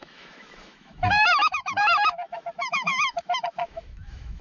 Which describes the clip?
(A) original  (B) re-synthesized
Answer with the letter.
B